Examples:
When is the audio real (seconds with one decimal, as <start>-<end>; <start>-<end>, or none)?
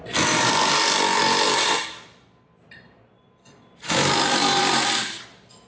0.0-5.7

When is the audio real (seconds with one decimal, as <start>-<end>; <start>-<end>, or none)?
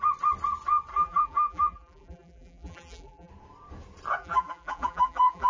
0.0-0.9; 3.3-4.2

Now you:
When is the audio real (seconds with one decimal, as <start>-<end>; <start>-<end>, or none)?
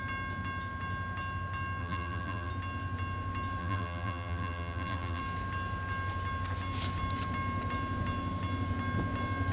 0.0-1.8; 2.5-3.6; 5.2-9.5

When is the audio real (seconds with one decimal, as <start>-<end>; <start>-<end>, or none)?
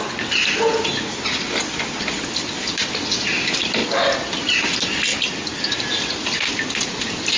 0.0-7.4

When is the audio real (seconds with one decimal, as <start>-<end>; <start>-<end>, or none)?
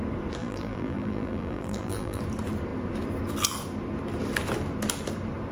0.0-0.4; 2.2-5.5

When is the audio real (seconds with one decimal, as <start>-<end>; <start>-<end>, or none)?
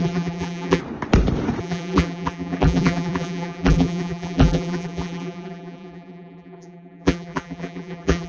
0.8-1.6